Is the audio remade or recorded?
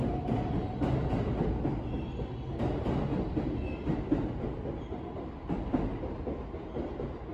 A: recorded